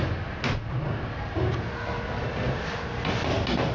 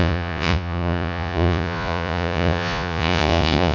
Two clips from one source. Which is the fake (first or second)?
second